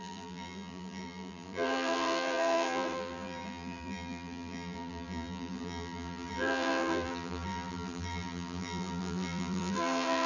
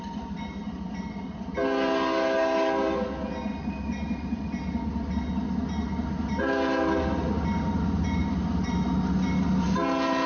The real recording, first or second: second